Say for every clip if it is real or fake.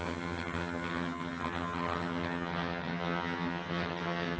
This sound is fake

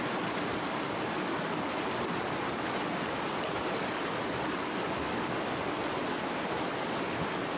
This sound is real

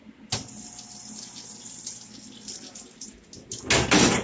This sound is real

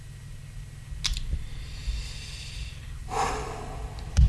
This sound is real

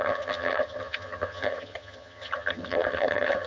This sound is fake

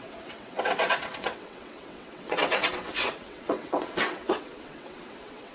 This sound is fake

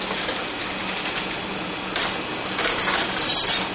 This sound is real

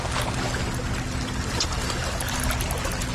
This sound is real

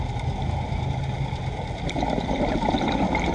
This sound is real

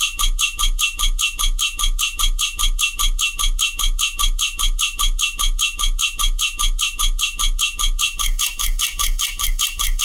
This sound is fake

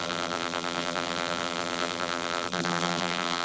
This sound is fake